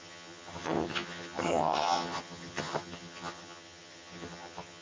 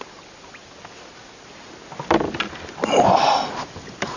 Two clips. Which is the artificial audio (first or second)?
first